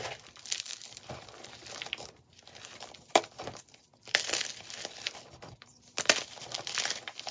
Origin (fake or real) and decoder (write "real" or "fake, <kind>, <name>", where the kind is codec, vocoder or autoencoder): fake, vocoder, BigVGAN v2